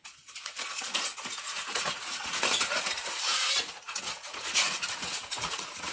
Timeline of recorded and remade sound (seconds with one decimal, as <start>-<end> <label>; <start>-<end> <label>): 0.0-5.9 remade